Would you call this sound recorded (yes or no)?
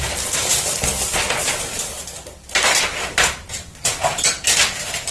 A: yes